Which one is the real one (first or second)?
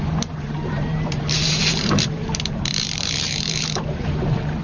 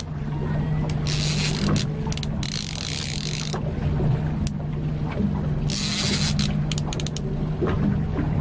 second